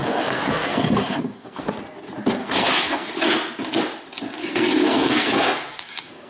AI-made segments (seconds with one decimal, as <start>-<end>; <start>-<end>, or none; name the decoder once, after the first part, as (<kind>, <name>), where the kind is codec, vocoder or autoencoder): 0.0-1.7 (codec, SNAC); 2.4-3.1; 4.4-6.3